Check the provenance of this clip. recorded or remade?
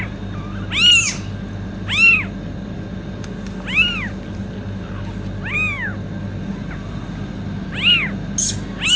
recorded